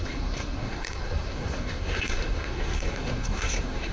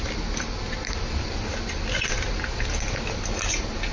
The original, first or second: second